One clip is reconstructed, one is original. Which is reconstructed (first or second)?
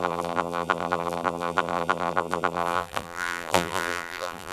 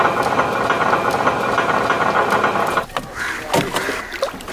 first